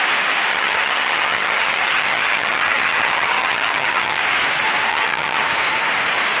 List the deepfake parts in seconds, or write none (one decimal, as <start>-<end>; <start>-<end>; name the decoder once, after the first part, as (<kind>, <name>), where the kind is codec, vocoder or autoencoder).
0.5-4.2 (vocoder, HiFi-GAN); 4.9-5.4